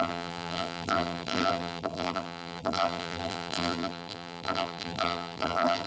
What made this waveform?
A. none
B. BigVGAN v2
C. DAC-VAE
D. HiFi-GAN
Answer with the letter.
B